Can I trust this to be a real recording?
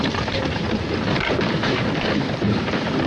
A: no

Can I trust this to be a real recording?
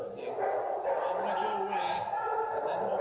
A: yes